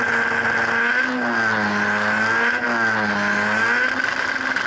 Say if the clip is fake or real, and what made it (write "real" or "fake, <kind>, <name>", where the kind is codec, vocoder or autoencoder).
real